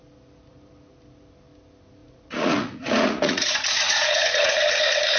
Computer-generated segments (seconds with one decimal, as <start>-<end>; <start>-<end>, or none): 2.0-5.2